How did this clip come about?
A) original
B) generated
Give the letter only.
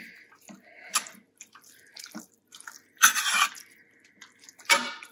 B